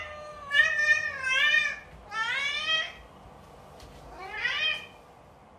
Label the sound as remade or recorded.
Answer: recorded